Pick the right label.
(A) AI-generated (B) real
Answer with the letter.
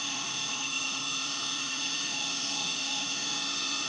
A